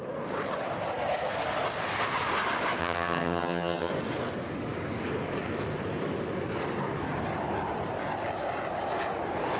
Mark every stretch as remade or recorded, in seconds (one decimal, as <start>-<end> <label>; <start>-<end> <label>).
0.0-2.8 recorded; 2.8-3.9 remade; 3.9-9.6 recorded